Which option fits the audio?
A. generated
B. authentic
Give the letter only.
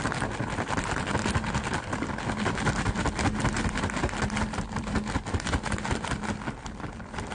B